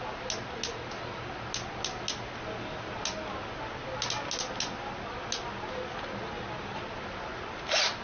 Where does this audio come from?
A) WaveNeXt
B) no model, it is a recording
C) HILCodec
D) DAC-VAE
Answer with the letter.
B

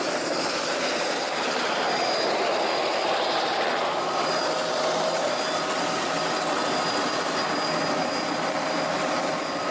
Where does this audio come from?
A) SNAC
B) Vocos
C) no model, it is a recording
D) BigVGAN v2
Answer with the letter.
D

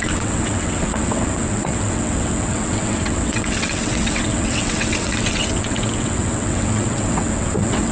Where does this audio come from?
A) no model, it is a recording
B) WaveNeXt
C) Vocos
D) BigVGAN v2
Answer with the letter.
B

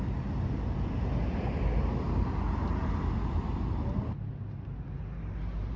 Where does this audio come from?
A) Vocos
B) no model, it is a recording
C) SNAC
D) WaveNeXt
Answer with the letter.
B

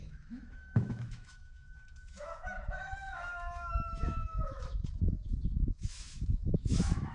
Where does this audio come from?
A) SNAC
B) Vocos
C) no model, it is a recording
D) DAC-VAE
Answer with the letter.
D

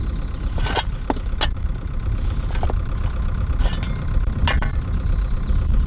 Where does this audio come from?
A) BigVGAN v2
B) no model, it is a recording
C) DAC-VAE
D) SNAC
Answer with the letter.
B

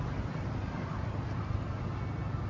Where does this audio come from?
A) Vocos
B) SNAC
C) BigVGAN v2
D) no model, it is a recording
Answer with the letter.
D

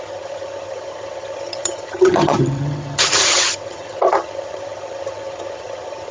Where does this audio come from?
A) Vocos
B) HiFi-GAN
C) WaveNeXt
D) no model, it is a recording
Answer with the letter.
B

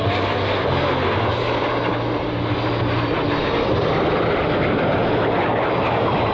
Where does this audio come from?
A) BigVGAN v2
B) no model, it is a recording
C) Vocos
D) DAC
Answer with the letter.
B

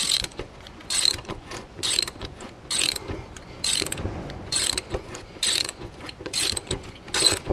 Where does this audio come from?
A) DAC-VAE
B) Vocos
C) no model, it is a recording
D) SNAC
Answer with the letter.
B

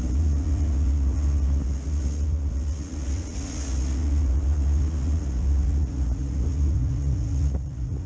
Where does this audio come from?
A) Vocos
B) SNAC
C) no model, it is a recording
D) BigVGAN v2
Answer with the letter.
A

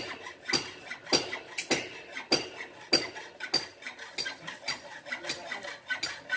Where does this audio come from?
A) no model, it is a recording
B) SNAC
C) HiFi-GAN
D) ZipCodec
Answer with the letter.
A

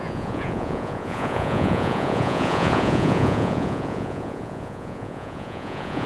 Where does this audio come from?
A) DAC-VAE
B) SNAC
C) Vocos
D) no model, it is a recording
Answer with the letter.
C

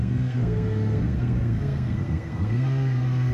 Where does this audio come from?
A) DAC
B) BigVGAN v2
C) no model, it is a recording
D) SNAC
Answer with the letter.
D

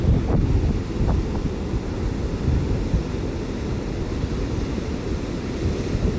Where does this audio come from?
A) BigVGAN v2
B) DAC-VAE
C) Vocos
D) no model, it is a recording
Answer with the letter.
D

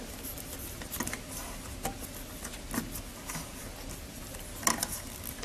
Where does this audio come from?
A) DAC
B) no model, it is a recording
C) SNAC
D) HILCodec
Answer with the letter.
B